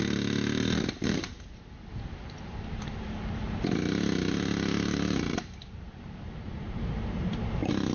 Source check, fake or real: fake